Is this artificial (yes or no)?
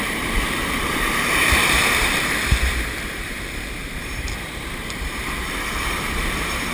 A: yes